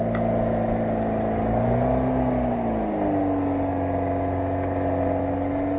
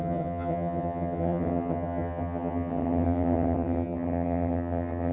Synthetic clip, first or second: second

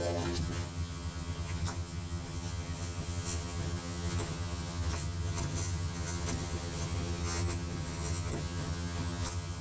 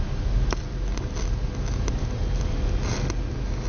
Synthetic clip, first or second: first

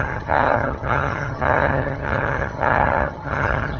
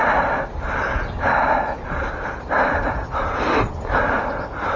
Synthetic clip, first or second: first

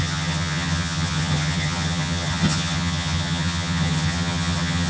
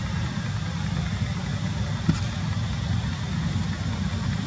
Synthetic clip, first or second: first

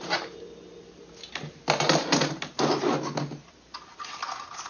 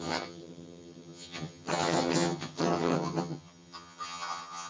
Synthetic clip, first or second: second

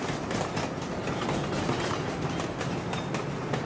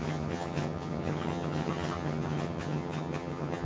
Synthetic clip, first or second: second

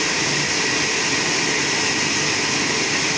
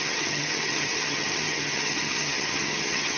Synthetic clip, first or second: second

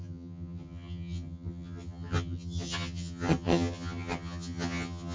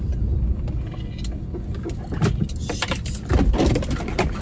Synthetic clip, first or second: first